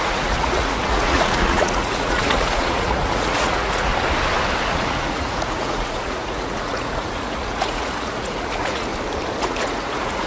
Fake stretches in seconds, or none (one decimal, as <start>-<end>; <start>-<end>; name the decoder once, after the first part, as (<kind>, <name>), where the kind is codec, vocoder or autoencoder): 0.0-3.9 (vocoder, Vocos); 4.7-8.9; 9.4-10.3